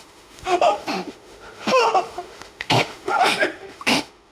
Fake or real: fake